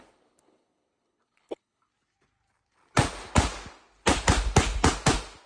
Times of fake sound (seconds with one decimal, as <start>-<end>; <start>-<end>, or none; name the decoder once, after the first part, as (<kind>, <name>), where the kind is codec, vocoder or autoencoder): 0.0-1.9 (codec, HILCodec)